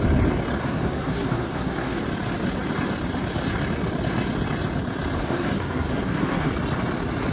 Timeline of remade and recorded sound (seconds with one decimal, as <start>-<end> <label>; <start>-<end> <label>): 0.0-0.6 recorded; 0.6-2.0 remade; 2.0-5.2 recorded; 5.2-6.5 remade; 6.5-7.3 recorded